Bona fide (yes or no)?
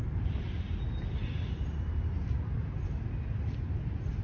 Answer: yes